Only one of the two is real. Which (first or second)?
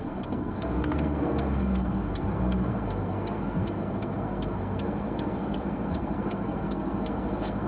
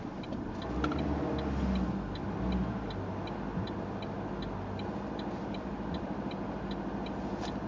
second